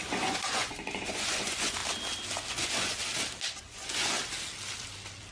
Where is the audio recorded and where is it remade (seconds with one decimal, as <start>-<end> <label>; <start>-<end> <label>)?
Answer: 0.0-1.8 remade; 1.8-2.5 recorded; 2.5-3.1 remade; 3.1-3.6 recorded; 3.6-4.2 remade; 4.2-5.3 recorded